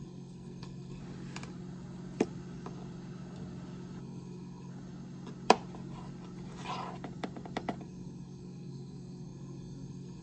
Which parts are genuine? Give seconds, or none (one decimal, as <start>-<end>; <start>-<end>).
1.0-4.0; 4.7-7.8